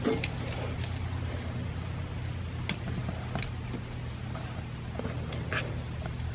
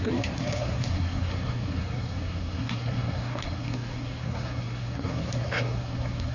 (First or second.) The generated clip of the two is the second